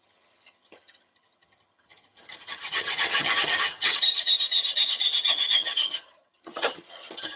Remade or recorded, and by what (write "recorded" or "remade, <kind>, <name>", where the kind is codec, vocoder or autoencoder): remade, vocoder, HiFi-GAN